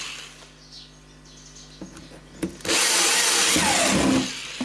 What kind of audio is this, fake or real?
real